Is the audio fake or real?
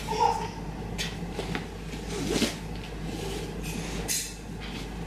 real